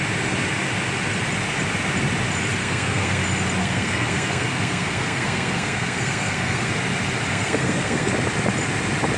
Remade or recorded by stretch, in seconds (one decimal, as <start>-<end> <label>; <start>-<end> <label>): 0.0-2.6 recorded; 2.6-3.2 remade; 3.2-3.6 recorded; 3.6-6.7 remade; 6.7-7.3 recorded; 7.3-8.1 remade; 8.1-9.2 recorded